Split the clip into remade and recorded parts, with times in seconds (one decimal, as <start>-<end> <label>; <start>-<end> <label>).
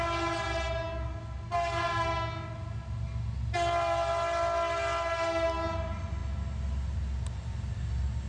0.0-8.3 recorded